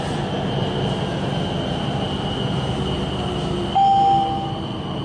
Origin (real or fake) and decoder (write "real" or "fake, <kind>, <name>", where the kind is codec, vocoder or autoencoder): real